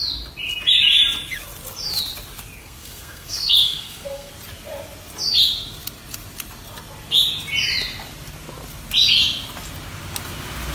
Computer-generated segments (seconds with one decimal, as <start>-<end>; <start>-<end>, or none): 2.6-4.3